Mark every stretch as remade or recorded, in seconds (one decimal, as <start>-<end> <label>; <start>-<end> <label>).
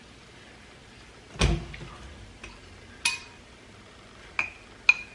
0.0-5.1 recorded